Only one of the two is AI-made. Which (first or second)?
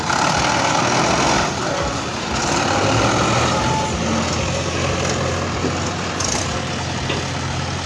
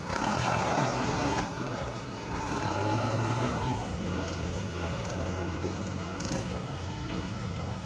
second